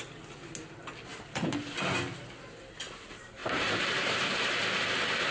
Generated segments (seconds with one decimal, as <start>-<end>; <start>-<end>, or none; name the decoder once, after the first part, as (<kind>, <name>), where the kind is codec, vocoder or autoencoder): 3.4-4.5 (vocoder, BigVGAN v2)